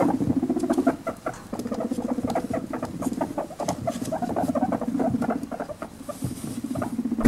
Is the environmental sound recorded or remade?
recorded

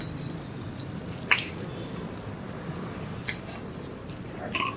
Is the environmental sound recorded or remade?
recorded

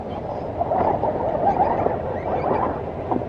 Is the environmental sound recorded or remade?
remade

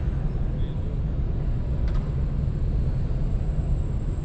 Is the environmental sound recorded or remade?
recorded